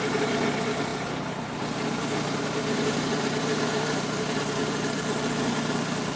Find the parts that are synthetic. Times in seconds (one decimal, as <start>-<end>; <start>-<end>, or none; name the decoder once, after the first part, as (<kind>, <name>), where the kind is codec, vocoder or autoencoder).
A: 0.0-4.6 (vocoder, BigVGAN v2)